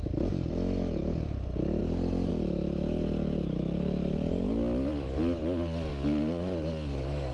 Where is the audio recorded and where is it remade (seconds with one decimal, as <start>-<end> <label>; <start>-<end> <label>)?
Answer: 0.0-7.3 recorded